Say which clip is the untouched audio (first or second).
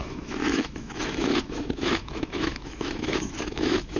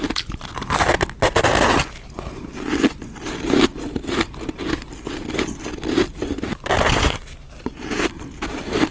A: second